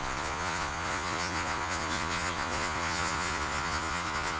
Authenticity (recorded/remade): remade